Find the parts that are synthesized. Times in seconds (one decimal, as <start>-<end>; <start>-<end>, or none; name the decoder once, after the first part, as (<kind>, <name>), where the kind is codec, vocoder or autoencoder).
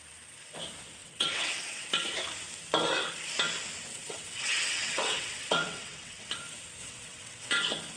1.0-1.9 (vocoder, WaveNeXt); 3.9-6.3; 6.8-7.5